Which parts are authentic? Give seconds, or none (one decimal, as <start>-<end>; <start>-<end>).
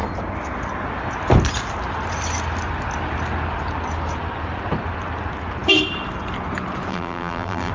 0.0-6.9